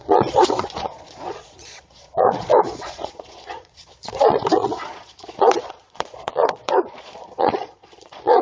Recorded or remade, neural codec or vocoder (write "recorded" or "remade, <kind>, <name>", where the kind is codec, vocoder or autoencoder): remade, vocoder, Vocos